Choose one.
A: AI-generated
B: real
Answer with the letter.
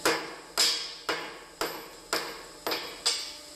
B